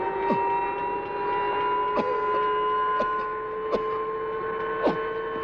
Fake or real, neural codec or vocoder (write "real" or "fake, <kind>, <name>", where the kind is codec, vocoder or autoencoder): real